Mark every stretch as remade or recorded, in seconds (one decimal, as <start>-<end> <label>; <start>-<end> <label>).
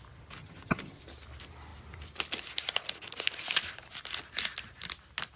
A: 0.0-0.4 recorded; 0.4-1.0 remade; 1.0-5.4 recorded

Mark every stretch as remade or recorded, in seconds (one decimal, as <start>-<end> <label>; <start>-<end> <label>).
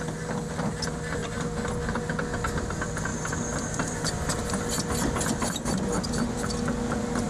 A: 0.0-7.3 recorded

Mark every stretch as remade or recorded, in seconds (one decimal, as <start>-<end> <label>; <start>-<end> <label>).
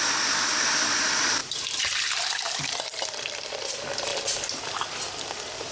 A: 0.0-1.4 recorded; 1.4-2.8 remade; 2.8-5.7 recorded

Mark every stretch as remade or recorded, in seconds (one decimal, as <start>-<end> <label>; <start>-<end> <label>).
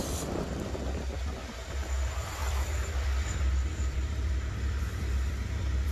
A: 0.0-2.4 recorded; 2.4-5.9 remade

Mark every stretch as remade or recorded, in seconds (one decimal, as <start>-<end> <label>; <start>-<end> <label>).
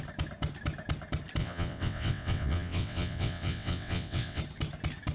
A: 0.0-1.4 recorded; 1.4-4.4 remade; 4.4-5.1 recorded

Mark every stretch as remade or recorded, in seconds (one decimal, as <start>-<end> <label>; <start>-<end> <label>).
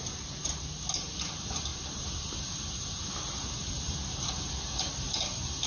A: 0.0-5.7 recorded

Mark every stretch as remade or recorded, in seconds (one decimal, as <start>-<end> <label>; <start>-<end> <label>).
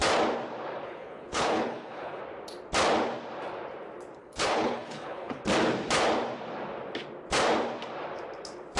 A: 0.0-0.7 recorded; 0.7-2.2 remade; 2.2-4.2 recorded; 4.2-5.4 remade; 5.4-8.8 recorded